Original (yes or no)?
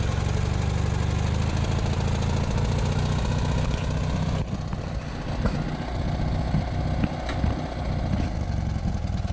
yes